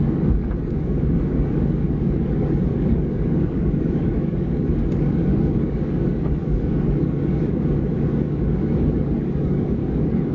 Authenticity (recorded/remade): remade